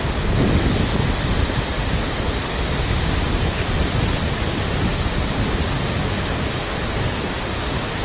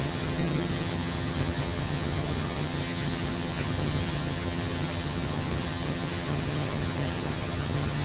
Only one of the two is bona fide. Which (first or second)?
first